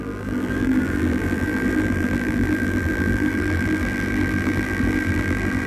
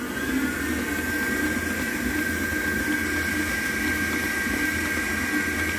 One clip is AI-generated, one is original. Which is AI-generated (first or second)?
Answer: first